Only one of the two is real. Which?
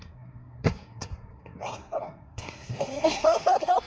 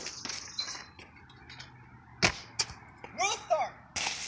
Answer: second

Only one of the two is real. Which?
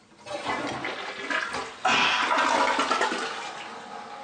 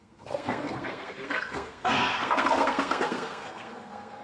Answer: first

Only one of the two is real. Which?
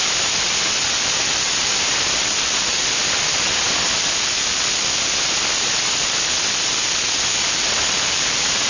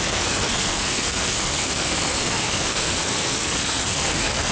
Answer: first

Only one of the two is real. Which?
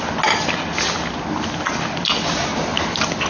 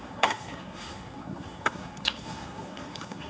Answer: first